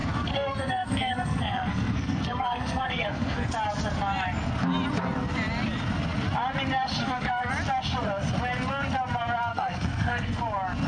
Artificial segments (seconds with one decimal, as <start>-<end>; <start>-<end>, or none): 0.0-3.5; 7.0-7.5; 9.5-10.4